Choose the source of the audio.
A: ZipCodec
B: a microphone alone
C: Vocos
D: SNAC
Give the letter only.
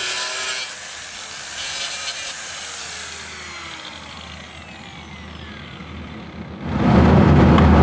B